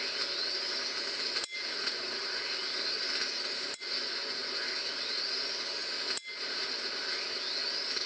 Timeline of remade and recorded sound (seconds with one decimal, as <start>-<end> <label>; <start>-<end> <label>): 0.0-1.6 recorded; 1.6-2.2 remade; 2.2-8.1 recorded